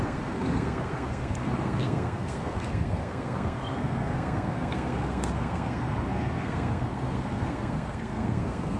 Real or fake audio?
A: fake